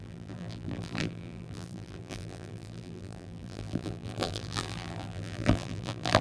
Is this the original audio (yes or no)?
no